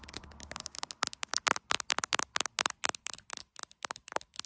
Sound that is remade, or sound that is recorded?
recorded